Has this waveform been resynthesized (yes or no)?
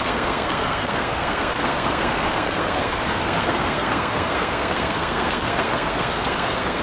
yes